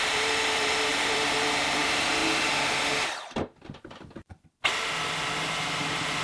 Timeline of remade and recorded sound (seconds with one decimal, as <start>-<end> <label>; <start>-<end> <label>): 0.0-2.2 remade; 2.2-5.6 recorded; 5.6-6.2 remade